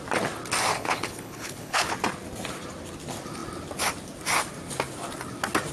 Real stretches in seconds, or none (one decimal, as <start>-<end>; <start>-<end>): 0.0-0.7; 1.9-5.7